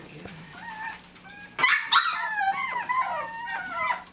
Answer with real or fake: real